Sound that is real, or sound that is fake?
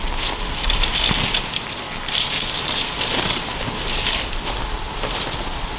fake